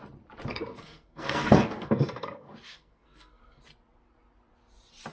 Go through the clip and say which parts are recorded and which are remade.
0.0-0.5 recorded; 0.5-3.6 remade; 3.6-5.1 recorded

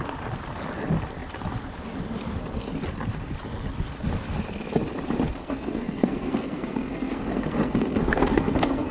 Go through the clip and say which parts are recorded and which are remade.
0.0-5.4 recorded; 5.4-8.9 remade

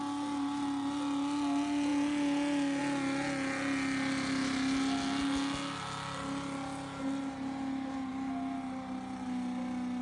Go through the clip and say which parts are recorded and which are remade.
0.0-10.0 recorded

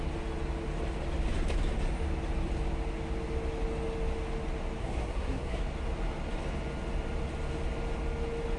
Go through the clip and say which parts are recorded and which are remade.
0.0-4.8 recorded; 4.8-5.6 remade; 5.6-8.6 recorded

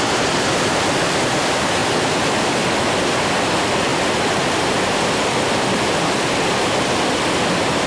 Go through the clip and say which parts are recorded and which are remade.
0.0-7.9 recorded

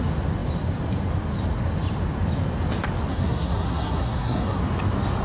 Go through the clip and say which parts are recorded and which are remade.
0.0-3.1 recorded; 3.1-4.6 remade; 4.6-5.2 recorded

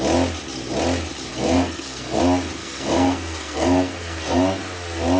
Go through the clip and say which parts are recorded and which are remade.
0.0-1.3 recorded; 1.3-2.2 remade; 2.2-2.6 recorded; 2.6-4.4 remade; 4.4-5.2 recorded